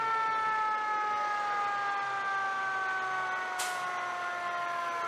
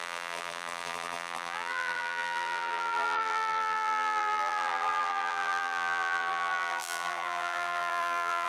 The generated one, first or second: second